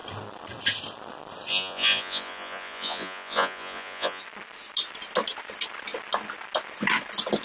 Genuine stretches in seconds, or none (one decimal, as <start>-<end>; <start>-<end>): 0.0-1.5; 4.2-7.4